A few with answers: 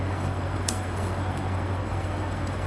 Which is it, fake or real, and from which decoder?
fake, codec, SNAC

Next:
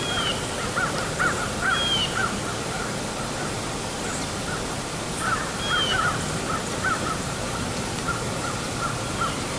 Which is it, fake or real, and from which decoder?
real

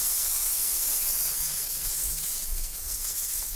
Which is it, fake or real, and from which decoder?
fake, codec, SNAC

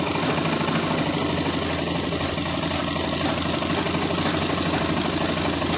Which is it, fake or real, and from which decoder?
real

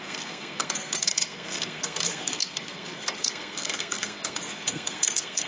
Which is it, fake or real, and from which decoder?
fake, codec, SNAC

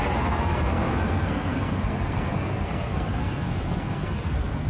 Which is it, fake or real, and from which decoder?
fake, codec, SNAC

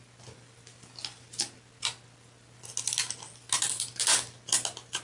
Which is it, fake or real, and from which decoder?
real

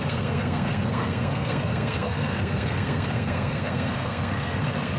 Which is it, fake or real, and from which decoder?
fake, codec, SNAC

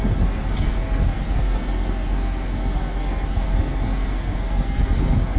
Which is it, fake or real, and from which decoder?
fake, codec, SNAC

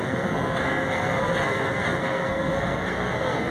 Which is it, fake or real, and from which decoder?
fake, codec, SNAC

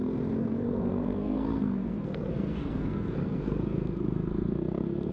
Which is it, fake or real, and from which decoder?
fake, codec, SNAC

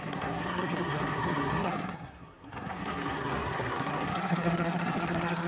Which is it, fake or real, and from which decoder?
fake, codec, SNAC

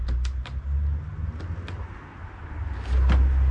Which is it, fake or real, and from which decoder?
real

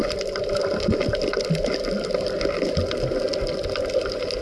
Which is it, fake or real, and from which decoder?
real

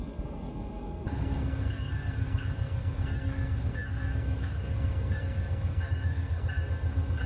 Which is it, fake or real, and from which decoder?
fake, codec, SNAC